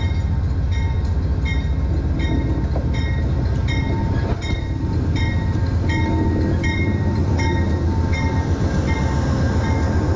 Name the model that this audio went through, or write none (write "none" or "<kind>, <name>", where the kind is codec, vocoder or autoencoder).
none